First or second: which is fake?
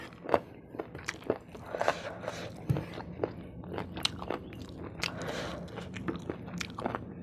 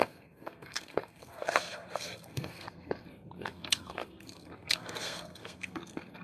second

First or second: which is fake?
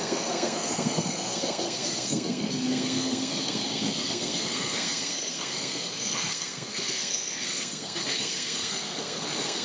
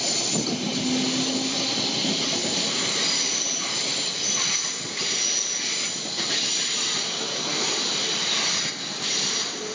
first